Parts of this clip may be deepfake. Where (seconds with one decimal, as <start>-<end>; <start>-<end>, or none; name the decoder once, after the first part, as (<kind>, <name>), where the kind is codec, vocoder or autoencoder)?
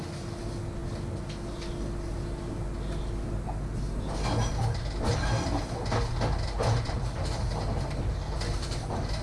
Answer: none